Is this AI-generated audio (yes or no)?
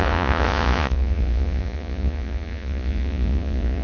yes